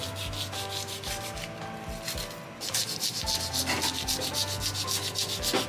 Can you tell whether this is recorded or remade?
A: recorded